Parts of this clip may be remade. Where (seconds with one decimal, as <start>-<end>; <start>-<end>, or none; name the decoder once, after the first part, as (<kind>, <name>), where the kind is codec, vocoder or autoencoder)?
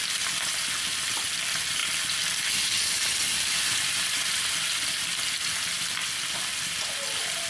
none